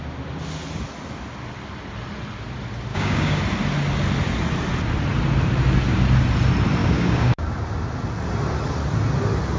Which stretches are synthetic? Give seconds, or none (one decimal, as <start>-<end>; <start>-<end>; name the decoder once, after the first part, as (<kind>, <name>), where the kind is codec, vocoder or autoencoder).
2.9-3.4 (codec, DAC); 6.8-7.5